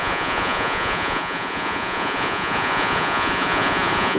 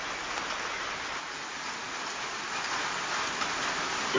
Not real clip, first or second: first